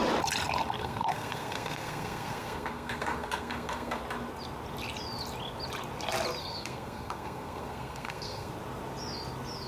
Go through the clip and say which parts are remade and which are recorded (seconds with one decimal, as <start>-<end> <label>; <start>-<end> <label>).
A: 0.0-0.8 recorded; 0.8-4.0 remade; 4.0-6.4 recorded; 6.4-8.5 remade; 8.5-9.7 recorded